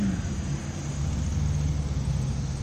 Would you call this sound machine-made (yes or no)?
no